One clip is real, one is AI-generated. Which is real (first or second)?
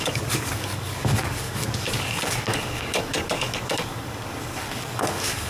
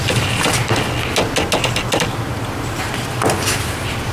second